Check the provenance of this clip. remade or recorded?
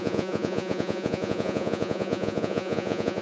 remade